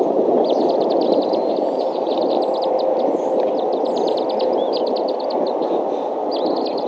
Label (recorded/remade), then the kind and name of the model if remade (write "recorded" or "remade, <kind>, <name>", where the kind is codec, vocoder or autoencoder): recorded